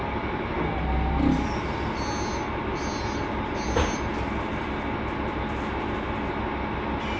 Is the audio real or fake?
real